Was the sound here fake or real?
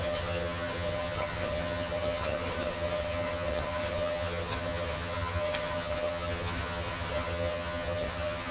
fake